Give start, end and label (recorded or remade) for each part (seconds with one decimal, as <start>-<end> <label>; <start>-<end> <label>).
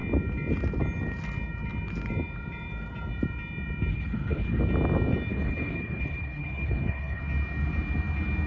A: 0.0-3.9 recorded; 3.9-4.6 remade; 4.6-5.3 recorded; 5.3-7.2 remade; 7.2-8.5 recorded